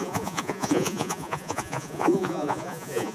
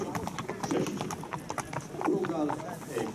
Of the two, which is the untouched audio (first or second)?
second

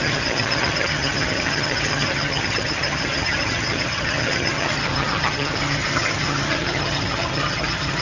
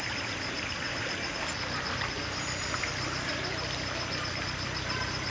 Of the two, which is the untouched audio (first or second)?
second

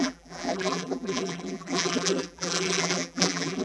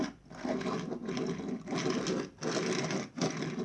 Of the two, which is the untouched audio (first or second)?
second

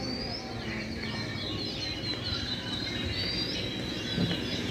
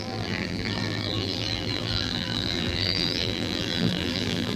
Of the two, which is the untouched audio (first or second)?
first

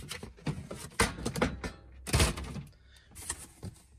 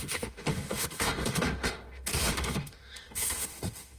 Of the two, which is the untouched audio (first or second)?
first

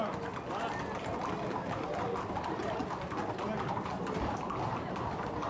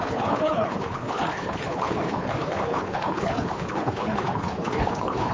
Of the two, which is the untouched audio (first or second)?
first